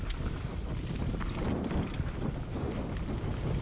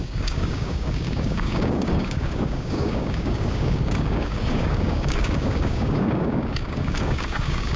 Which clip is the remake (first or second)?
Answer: second